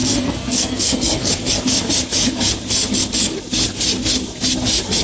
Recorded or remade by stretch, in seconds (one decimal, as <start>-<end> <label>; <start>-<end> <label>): 0.0-1.3 remade; 1.3-5.0 recorded